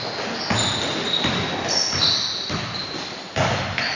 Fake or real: real